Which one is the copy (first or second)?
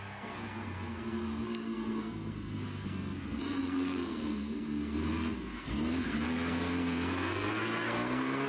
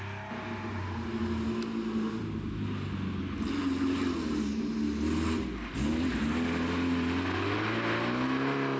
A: first